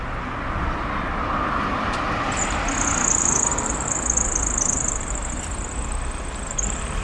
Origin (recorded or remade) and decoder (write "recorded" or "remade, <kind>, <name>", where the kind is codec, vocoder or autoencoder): recorded